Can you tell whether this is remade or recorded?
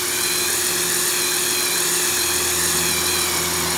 recorded